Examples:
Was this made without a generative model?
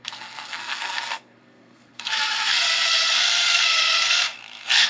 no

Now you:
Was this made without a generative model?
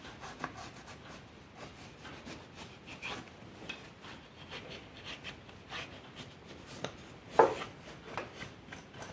yes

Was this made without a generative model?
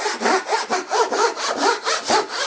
yes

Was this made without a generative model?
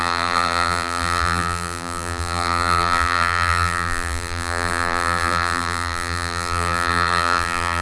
no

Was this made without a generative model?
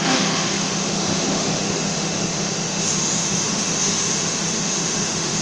no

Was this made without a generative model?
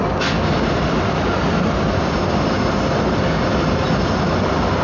yes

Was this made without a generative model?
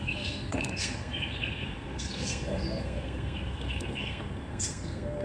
no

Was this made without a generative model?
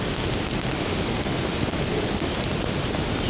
yes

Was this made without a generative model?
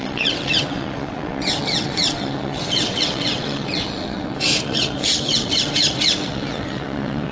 no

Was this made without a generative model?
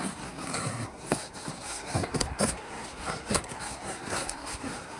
no